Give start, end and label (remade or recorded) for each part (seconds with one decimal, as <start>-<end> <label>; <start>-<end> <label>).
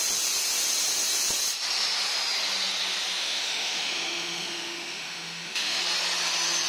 0.0-3.2 recorded; 3.2-5.8 remade; 5.8-6.7 recorded